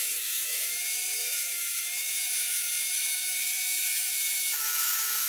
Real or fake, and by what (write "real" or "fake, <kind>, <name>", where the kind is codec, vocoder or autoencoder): fake, autoencoder, DAC-VAE